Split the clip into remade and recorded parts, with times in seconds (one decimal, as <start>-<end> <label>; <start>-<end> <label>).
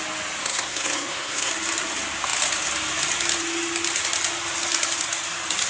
0.0-0.4 recorded; 0.4-1.5 remade; 1.5-5.7 recorded